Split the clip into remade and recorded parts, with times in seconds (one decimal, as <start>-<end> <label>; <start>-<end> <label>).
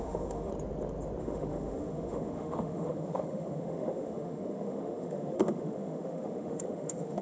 0.0-0.5 remade; 0.5-1.2 recorded; 1.2-7.2 remade